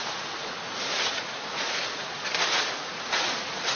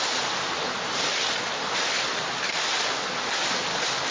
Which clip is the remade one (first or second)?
first